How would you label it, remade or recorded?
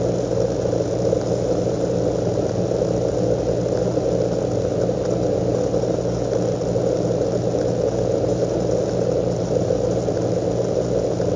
recorded